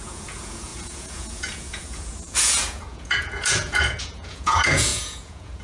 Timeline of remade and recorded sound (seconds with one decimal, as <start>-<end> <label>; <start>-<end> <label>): 0.0-5.6 remade